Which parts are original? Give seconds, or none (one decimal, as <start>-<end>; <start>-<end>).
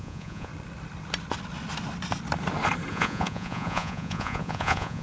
0.5-2.9